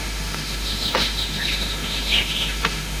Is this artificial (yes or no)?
yes